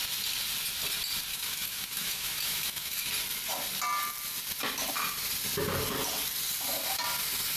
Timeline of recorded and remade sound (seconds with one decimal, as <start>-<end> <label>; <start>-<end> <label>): 0.0-1.3 recorded; 1.3-3.1 remade; 3.1-7.6 recorded